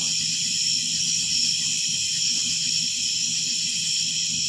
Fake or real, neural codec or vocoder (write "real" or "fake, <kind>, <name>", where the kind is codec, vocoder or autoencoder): real